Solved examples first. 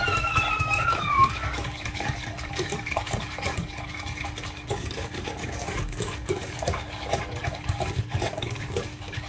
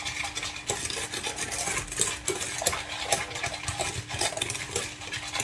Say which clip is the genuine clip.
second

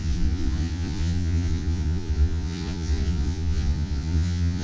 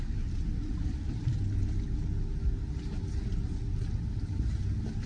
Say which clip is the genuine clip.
second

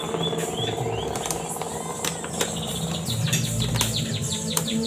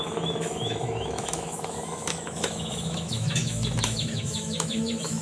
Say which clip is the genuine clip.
first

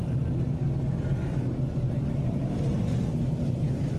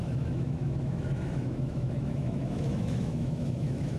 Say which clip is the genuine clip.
first